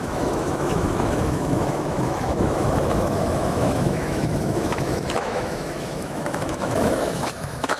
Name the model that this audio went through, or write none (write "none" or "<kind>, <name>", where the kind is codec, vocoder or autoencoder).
autoencoder, DAC-VAE